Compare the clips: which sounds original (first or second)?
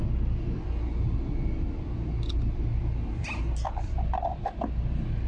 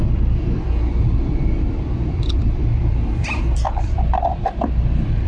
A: first